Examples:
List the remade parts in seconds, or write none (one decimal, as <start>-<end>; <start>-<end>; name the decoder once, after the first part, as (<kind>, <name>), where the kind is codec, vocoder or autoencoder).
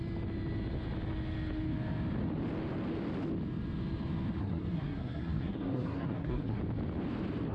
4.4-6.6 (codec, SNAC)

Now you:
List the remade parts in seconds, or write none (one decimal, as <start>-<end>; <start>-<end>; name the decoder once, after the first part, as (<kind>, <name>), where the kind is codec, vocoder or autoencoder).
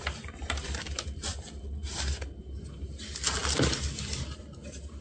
none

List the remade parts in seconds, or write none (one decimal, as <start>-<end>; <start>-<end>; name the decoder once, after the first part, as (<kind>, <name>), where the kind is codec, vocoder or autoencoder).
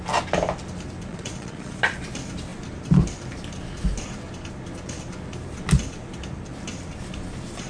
1.1-1.8 (vocoder, Vocos)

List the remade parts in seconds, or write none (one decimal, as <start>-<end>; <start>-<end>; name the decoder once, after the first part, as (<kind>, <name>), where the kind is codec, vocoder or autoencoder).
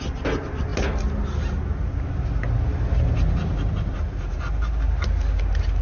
none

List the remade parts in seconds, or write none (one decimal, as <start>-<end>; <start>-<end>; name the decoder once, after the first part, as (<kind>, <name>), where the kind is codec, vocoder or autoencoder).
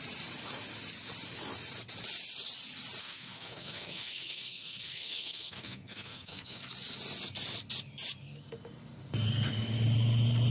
3.0-6.6 (codec, SNAC)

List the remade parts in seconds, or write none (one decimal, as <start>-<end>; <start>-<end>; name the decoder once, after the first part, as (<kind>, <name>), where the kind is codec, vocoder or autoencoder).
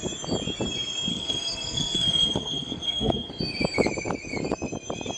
1.1-3.3 (codec, SNAC)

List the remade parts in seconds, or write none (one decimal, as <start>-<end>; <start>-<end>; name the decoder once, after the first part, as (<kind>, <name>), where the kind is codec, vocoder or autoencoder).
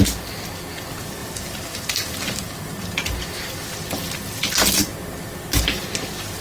1.2-3.1 (vocoder, BigVGAN v2)